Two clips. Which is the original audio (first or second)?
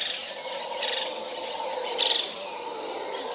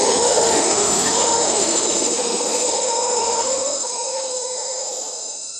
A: first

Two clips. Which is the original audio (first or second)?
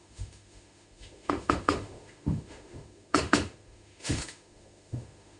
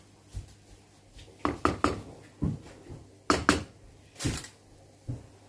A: second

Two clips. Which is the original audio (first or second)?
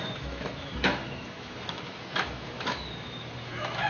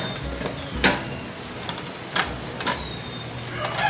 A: second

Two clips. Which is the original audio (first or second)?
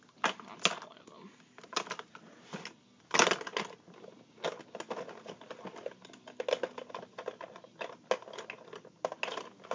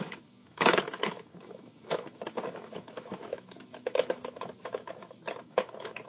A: first